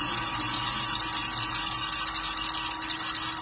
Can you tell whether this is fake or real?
real